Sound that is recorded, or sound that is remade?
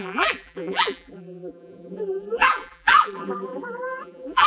remade